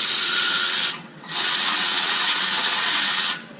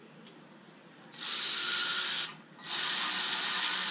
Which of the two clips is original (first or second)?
second